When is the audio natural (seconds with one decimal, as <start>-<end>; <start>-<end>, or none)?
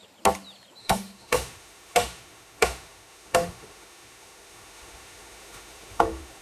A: 0.0-0.8